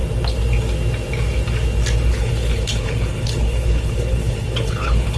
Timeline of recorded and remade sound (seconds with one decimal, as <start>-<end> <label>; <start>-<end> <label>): 0.0-2.1 recorded; 2.1-5.2 remade